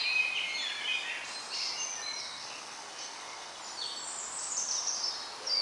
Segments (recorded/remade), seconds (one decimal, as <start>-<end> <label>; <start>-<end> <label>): 0.0-2.2 recorded; 2.2-3.6 remade; 3.6-5.6 recorded